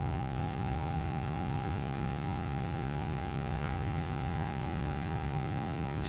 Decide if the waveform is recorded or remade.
remade